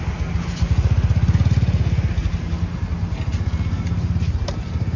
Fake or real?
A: real